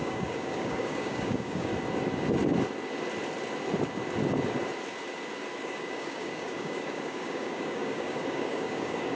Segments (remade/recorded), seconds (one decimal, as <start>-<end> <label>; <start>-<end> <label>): 0.0-1.7 remade; 1.7-5.6 recorded; 5.6-9.2 remade